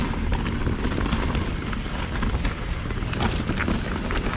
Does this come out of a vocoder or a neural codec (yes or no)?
no